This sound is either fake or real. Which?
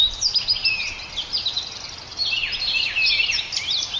real